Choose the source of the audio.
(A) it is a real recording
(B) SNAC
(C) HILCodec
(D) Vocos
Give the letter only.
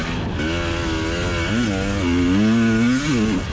A